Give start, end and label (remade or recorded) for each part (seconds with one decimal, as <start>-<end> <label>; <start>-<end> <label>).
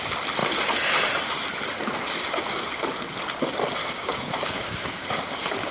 0.0-3.8 recorded; 3.8-5.7 remade